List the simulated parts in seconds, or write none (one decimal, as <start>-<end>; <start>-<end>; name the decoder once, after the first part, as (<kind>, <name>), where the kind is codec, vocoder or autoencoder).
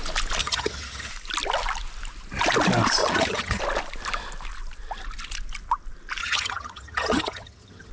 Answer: 0.4-1.1 (vocoder, HiFi-GAN); 3.0-3.6; 6.2-7.9